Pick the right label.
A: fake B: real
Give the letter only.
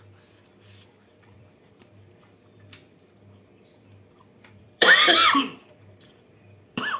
A